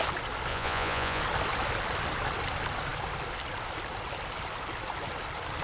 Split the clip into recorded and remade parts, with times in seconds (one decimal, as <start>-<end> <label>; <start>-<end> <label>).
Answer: 0.0-0.5 recorded; 0.5-1.2 remade; 1.2-5.6 recorded